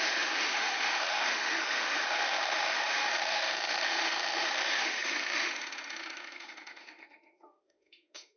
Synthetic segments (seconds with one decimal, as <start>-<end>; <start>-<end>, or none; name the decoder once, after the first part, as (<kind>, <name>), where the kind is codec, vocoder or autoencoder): 0.0-8.4 (autoencoder, DAC-VAE)

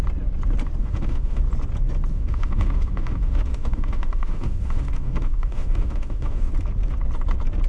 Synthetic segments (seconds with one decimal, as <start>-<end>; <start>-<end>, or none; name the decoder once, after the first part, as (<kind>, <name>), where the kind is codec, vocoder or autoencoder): 0.8-1.4 (autoencoder, DAC-VAE); 2.1-6.5

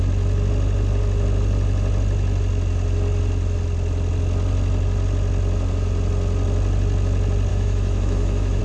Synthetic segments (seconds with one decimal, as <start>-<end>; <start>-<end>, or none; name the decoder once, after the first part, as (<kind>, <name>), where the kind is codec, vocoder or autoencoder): 7.5-8.6 (autoencoder, DAC-VAE)

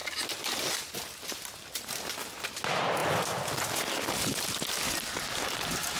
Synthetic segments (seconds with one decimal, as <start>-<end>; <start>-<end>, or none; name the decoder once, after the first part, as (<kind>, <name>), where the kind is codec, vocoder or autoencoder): none

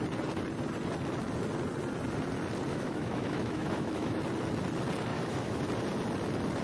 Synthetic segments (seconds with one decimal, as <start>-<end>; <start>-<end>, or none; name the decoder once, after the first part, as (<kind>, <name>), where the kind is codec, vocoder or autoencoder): 2.7-4.2 (autoencoder, DAC-VAE); 5.1-5.6

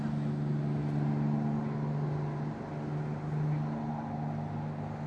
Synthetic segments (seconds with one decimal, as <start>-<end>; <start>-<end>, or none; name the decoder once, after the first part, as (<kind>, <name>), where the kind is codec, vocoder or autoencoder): none

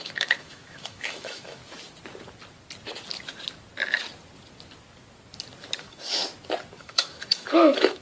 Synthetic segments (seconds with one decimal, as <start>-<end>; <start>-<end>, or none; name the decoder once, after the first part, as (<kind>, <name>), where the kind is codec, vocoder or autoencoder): 0.0-1.6 (autoencoder, DAC-VAE); 5.8-6.2; 6.8-8.0